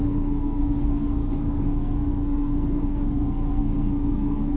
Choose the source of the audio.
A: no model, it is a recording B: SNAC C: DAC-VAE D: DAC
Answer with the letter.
B